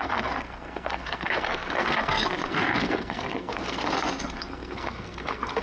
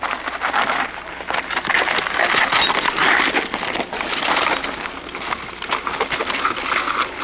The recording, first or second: second